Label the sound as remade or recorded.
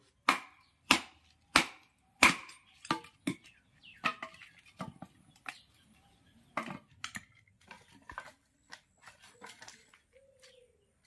recorded